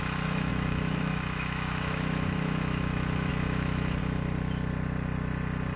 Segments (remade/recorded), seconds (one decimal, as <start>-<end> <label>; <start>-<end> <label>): 0.0-4.0 remade; 4.0-5.8 recorded